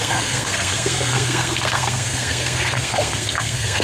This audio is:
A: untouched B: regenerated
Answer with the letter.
B